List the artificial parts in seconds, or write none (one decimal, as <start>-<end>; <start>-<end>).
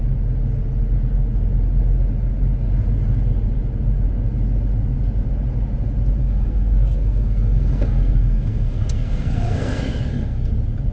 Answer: 6.2-10.5